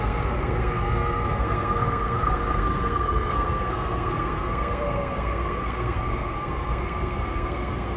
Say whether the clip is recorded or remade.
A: remade